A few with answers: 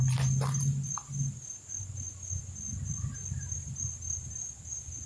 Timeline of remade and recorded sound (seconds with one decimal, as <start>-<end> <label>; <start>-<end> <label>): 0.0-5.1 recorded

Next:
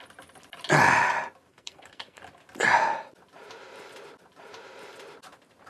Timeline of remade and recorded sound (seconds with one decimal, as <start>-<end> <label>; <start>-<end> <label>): 0.0-1.5 recorded; 1.5-2.2 remade; 2.2-5.7 recorded

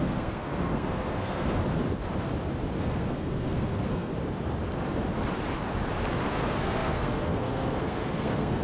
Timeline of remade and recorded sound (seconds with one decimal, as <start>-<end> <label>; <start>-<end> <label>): 0.0-1.6 remade; 1.6-2.8 recorded; 2.8-4.1 remade; 4.1-6.3 recorded; 6.3-8.6 remade

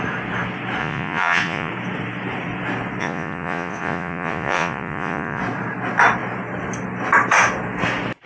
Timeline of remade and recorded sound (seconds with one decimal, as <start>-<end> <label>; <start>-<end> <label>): 0.0-0.8 recorded; 0.8-1.7 remade; 1.7-3.0 recorded; 3.0-5.4 remade; 5.4-8.3 recorded

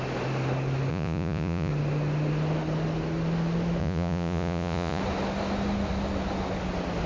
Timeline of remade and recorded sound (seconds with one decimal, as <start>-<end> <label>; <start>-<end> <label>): 0.0-0.9 recorded; 0.9-1.7 remade; 1.7-3.8 recorded; 3.8-5.0 remade; 5.0-7.1 recorded